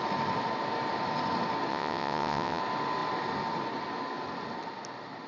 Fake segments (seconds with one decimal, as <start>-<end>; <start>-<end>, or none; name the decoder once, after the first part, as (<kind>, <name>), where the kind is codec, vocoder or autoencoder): 1.7-2.6 (vocoder, WaveNeXt)